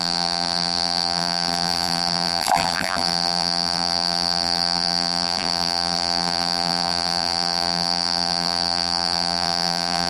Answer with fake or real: fake